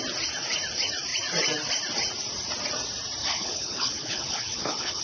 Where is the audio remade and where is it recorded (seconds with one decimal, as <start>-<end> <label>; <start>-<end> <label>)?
0.0-3.2 recorded; 3.2-5.0 remade